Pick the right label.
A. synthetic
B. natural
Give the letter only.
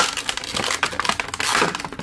B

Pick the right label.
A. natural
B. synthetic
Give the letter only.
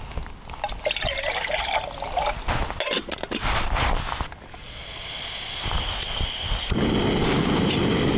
A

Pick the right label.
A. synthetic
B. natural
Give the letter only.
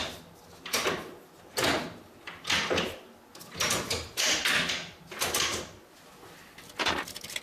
B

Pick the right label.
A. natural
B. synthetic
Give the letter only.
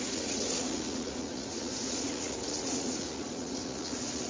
B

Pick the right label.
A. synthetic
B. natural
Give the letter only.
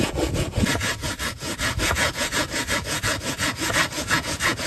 A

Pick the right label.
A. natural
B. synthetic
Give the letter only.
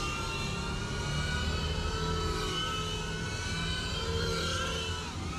A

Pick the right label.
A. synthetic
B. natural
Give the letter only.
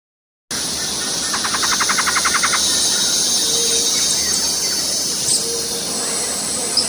B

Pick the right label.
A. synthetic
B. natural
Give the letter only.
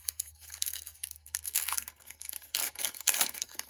A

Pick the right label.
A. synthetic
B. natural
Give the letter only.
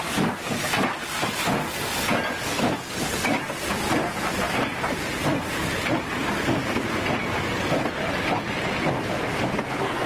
B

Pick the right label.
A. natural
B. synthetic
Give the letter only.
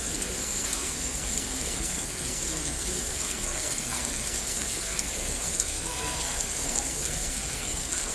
B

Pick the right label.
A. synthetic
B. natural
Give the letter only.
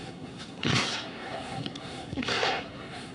A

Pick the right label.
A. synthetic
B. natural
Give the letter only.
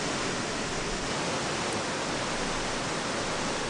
B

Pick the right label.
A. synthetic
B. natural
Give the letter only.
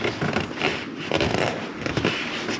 B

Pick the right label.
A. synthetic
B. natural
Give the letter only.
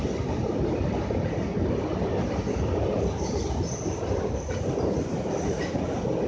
B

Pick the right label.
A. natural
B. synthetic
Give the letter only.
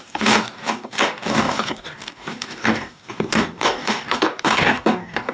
B